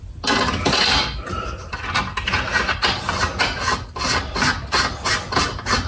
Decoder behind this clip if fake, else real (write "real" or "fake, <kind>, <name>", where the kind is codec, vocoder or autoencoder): real